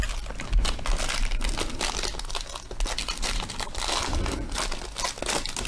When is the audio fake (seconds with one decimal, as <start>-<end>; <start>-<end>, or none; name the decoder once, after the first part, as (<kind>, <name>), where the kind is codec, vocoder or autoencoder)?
3.0-5.1 (vocoder, BigVGAN v2)